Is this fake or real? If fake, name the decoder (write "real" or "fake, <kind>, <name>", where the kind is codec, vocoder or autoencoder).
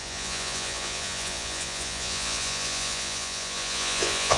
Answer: fake, vocoder, Vocos